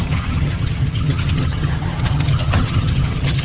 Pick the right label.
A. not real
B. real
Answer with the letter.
A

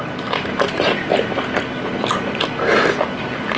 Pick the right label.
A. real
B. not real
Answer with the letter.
A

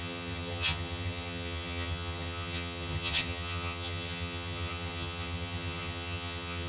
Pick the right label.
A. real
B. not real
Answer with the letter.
B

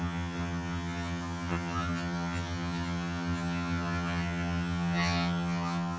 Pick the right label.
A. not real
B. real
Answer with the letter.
A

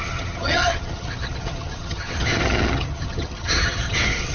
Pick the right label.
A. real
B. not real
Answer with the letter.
B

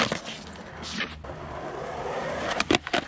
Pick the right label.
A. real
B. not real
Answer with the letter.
A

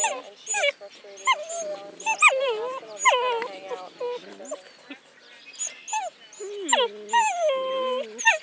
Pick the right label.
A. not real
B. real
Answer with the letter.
B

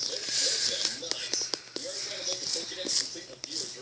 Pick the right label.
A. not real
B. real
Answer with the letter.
B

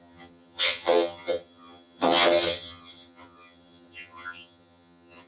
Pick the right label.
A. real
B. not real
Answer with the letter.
B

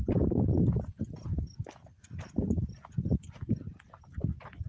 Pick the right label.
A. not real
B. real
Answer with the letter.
B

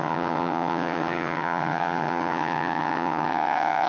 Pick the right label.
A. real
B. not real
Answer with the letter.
B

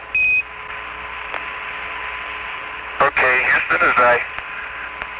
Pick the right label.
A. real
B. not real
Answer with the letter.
A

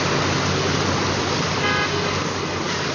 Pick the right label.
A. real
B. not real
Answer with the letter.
A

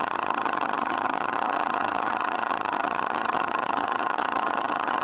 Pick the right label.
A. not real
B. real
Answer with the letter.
A